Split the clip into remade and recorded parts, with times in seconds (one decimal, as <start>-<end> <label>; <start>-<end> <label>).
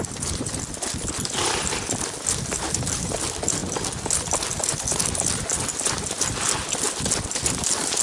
0.0-8.0 recorded